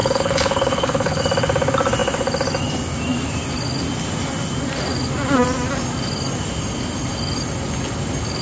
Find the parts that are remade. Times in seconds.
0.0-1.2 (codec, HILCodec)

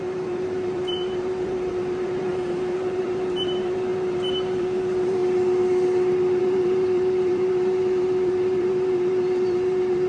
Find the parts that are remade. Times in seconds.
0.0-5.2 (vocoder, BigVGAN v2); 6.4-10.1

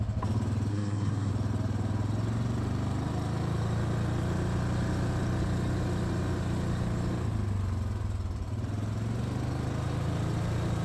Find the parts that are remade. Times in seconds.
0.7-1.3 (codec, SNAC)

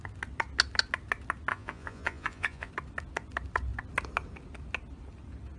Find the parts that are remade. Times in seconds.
1.5-2.7 (vocoder, Vocos)

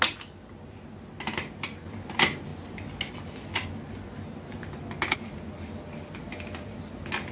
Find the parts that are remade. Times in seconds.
none

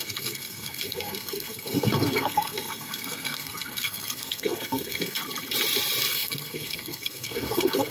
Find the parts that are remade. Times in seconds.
0.0-5.2 (codec, SNAC); 6.1-7.9

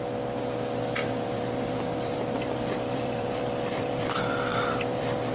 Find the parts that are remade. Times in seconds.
1.0-4.1 (vocoder, BigVGAN v2); 4.5-5.3

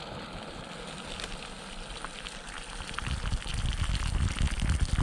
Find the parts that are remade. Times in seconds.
none